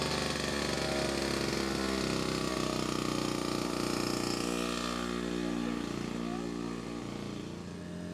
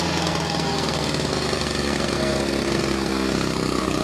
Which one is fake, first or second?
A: second